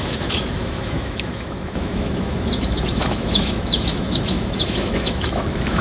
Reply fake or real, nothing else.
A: fake